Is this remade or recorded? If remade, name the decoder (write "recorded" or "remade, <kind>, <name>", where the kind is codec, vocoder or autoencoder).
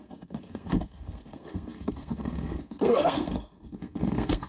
remade, codec, SNAC